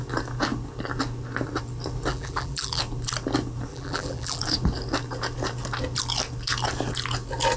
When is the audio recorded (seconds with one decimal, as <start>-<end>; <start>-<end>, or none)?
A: 0.0-2.1; 2.8-3.7; 4.4-7.6